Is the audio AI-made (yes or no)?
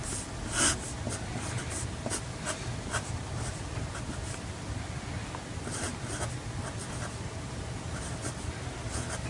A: no